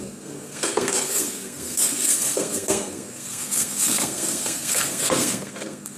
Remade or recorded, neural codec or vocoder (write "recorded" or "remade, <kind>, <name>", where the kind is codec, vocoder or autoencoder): remade, codec, SNAC